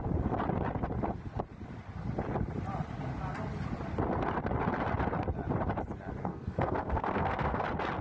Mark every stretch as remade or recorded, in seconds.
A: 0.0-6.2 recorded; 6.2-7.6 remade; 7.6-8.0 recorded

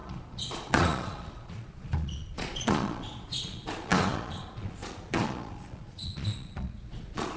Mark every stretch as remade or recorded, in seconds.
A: 0.0-7.4 remade

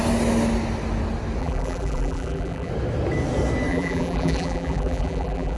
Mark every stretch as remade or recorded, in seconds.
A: 0.0-1.4 recorded; 1.4-2.7 remade; 2.7-3.7 recorded; 3.7-5.6 remade